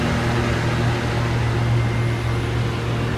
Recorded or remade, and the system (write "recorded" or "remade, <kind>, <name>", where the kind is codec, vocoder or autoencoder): recorded